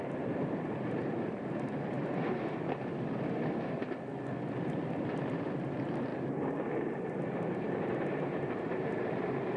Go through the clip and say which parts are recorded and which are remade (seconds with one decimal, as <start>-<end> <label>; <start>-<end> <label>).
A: 0.0-3.8 remade; 3.8-4.9 recorded; 4.9-9.6 remade